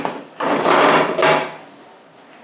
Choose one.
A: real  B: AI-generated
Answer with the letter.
A